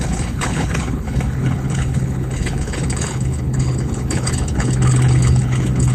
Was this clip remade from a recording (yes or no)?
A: yes